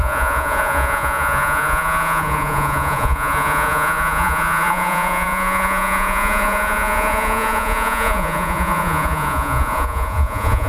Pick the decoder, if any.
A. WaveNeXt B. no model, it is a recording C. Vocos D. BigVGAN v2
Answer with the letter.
C